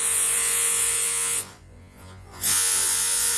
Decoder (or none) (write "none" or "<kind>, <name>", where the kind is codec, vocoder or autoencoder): vocoder, Vocos